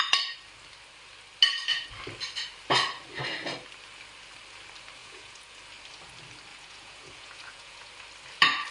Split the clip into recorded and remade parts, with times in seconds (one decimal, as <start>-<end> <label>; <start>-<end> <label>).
0.0-5.0 recorded; 5.0-5.6 remade; 5.6-6.5 recorded; 6.5-7.9 remade; 7.9-8.7 recorded